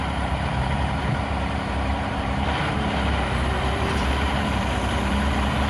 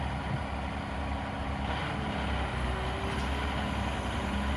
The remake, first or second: first